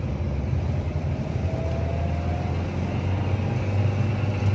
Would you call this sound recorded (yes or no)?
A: yes